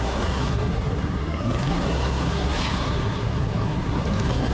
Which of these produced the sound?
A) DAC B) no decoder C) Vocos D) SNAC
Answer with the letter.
D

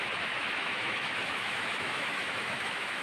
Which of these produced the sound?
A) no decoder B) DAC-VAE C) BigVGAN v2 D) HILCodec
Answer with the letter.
B